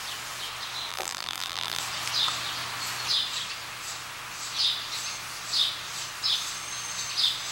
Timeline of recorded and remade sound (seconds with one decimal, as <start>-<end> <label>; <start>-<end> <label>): 0.0-0.9 recorded; 0.9-1.8 remade; 1.8-7.5 recorded